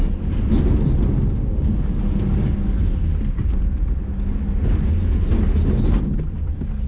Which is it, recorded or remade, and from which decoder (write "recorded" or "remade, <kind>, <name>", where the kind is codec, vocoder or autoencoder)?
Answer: recorded